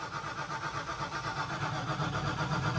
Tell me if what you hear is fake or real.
real